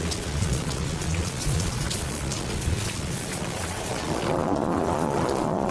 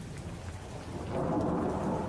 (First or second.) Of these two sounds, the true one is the second